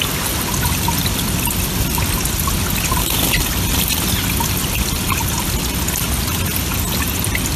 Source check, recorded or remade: recorded